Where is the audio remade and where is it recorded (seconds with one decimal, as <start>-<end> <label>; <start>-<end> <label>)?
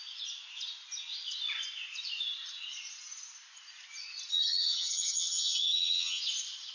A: 0.0-4.3 recorded; 4.3-6.2 remade; 6.2-6.7 recorded